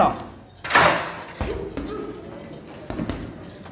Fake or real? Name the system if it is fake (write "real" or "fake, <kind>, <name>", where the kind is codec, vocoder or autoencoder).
real